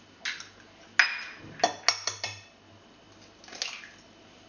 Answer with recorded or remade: recorded